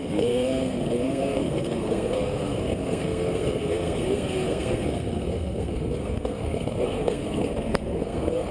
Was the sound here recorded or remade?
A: remade